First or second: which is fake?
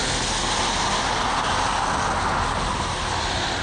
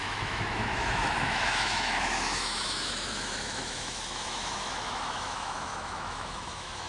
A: second